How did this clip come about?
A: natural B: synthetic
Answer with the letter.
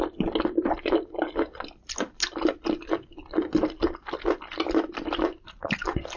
A